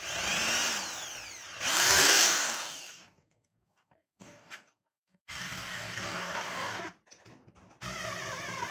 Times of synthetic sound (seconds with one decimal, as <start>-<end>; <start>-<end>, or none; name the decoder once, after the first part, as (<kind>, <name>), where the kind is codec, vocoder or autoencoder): 1.7-6.8 (codec, DAC)